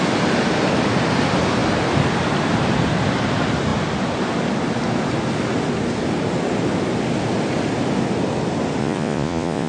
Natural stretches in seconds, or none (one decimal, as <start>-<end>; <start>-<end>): 0.0-8.8